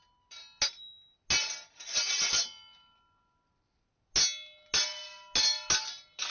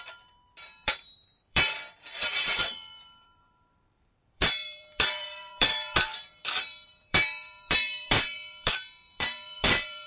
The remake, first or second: second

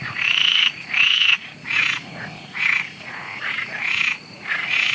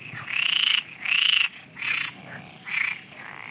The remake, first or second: first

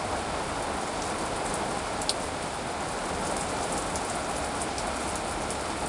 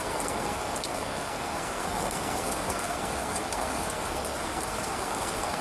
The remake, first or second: second